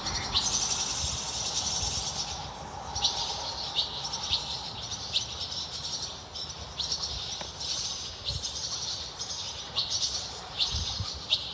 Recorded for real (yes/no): yes